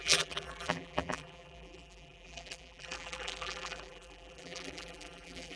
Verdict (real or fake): fake